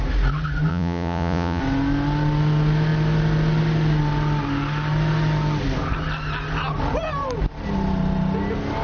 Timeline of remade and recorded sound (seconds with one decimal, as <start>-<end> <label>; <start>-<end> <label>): 0.0-0.7 recorded; 0.7-1.6 remade; 1.6-8.8 recorded